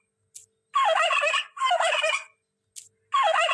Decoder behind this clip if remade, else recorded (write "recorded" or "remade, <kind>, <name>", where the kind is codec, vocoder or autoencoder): recorded